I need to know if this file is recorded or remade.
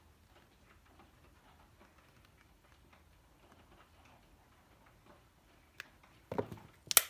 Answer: recorded